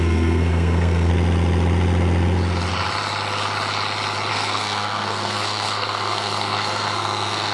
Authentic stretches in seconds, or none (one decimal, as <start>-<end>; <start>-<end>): 1.1-4.3